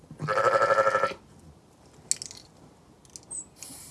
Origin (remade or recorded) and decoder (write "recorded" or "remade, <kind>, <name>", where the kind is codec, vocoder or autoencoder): recorded